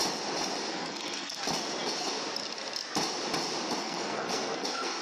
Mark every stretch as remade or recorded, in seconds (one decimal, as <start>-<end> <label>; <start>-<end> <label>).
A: 0.0-0.7 recorded; 0.7-1.4 remade; 1.4-3.8 recorded; 3.8-5.0 remade